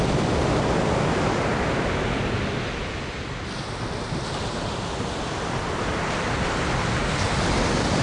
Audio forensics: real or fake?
real